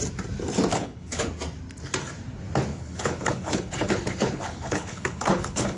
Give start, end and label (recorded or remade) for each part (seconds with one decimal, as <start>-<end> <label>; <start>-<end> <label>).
0.0-0.7 recorded; 0.7-1.3 remade; 1.3-2.7 recorded; 2.7-5.8 remade

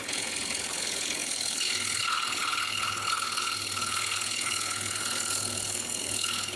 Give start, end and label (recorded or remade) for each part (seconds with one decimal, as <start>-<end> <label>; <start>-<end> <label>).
0.0-6.6 remade

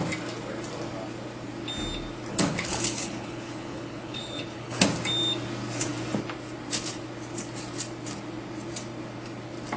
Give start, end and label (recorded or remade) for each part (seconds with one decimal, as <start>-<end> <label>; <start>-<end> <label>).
0.0-2.3 recorded; 2.3-4.8 remade; 4.8-9.8 recorded

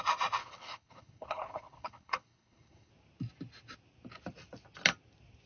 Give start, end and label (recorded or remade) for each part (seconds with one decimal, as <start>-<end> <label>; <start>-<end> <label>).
0.0-0.4 recorded; 0.4-2.9 remade; 2.9-5.5 recorded

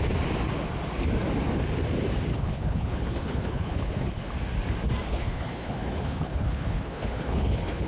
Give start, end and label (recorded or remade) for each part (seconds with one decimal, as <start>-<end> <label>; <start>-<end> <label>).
0.0-2.3 recorded; 2.3-4.3 remade; 4.3-5.1 recorded; 5.1-7.9 remade

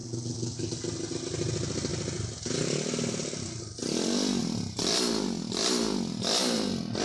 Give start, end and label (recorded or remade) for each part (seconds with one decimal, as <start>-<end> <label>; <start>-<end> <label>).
0.0-0.7 remade; 0.7-7.0 recorded